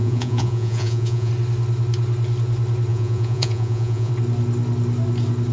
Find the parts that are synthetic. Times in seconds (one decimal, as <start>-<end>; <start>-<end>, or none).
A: 0.0-1.3; 2.9-4.1